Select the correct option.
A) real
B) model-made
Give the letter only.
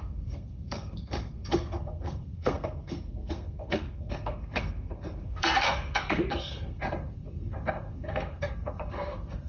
B